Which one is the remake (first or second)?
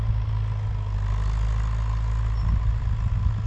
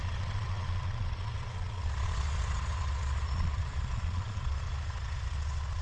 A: second